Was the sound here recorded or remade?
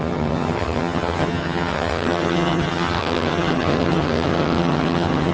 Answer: remade